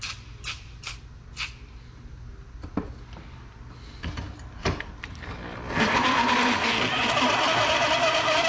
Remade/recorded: recorded